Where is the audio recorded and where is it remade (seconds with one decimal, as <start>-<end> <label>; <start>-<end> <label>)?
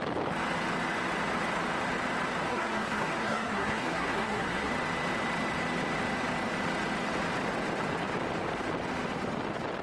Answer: 0.0-2.5 recorded; 2.5-4.7 remade; 4.7-9.8 recorded